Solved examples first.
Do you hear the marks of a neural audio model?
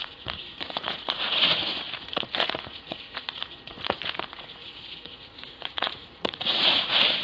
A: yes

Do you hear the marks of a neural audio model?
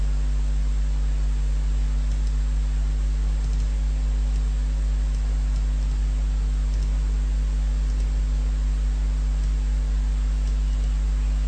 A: no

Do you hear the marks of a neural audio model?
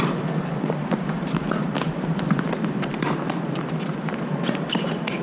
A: yes